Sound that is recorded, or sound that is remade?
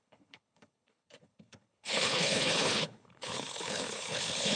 remade